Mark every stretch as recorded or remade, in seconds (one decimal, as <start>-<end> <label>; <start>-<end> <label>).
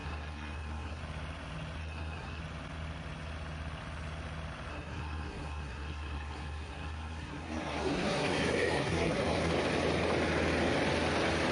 0.0-1.0 remade; 1.0-1.8 recorded; 1.8-2.4 remade; 2.4-4.7 recorded; 4.7-9.5 remade; 9.5-11.5 recorded